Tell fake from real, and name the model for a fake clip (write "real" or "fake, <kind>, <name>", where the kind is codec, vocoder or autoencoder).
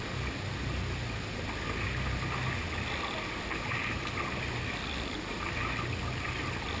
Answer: real